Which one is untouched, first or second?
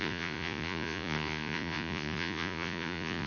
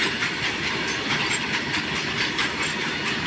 second